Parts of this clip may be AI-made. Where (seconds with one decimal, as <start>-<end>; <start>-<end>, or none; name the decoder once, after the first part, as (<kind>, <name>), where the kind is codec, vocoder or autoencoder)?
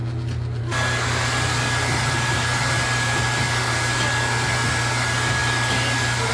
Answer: none